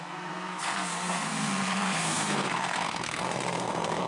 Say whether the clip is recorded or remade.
remade